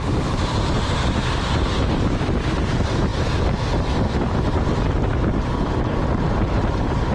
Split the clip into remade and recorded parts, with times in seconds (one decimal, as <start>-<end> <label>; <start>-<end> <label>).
0.0-5.1 remade; 5.1-6.2 recorded; 6.2-7.1 remade